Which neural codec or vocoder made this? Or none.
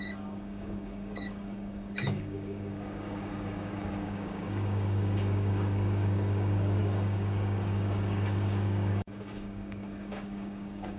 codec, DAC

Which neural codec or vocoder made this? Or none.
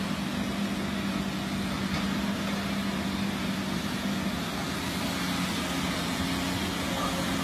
none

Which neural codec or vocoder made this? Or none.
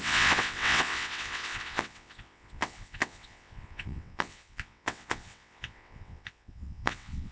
vocoder, WaveNeXt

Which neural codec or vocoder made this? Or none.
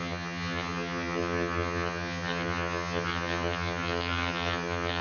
vocoder, HiFi-GAN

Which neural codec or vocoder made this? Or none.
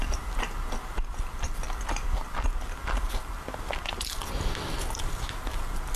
none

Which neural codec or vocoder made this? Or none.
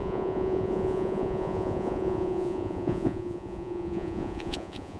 vocoder, Vocos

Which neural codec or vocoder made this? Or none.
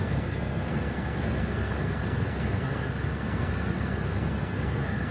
codec, SNAC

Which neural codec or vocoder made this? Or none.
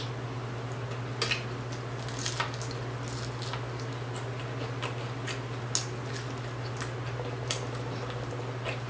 none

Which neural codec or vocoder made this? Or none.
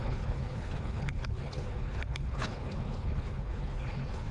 codec, HILCodec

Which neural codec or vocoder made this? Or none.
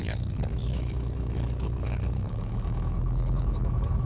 autoencoder, DAC-VAE